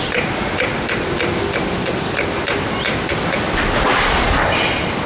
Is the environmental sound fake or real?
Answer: real